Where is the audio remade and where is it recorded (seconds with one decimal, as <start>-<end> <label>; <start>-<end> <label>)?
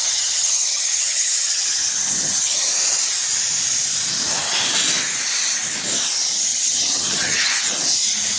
0.0-2.7 remade; 2.7-6.5 recorded; 6.5-7.5 remade; 7.5-8.4 recorded